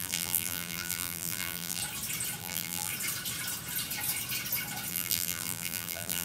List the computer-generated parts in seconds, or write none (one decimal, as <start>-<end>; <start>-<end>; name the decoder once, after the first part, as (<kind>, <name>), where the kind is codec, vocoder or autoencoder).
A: 0.0-1.8 (vocoder, BigVGAN v2); 2.4-2.9; 4.9-6.2